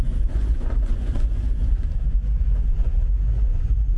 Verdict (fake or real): fake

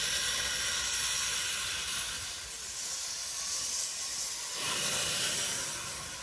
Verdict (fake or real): real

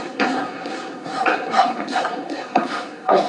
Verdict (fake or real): fake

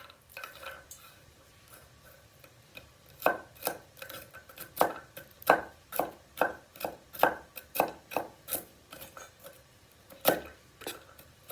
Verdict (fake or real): fake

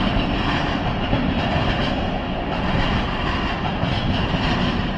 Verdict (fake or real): real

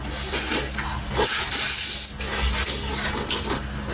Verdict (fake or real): real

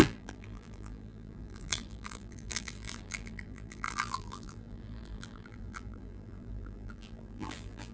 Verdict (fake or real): fake